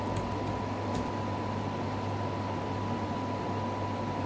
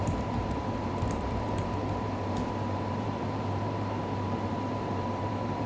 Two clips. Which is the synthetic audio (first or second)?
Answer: second